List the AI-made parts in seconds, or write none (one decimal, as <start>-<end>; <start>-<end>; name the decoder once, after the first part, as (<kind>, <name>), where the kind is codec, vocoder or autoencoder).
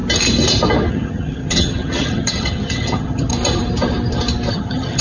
0.9-3.3 (vocoder, HiFi-GAN); 4.5-5.0